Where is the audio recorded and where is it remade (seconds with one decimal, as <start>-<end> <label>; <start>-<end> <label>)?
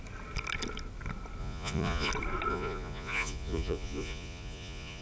0.0-1.4 recorded; 1.4-2.1 remade; 2.1-2.5 recorded; 2.5-5.0 remade